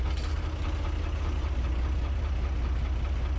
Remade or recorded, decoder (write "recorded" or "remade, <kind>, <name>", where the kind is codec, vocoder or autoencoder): recorded